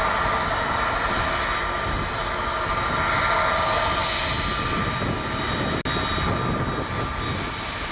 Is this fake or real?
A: real